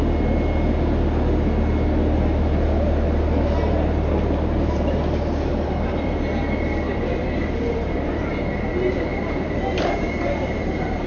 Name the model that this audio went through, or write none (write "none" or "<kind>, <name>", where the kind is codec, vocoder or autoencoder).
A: none